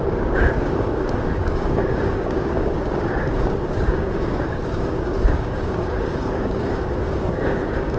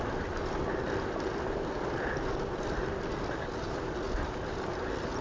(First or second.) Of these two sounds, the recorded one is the second